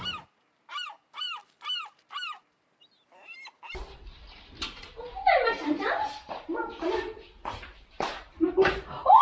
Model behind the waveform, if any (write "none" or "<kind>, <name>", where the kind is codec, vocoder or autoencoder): vocoder, BigVGAN v2